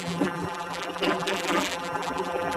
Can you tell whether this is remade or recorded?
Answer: remade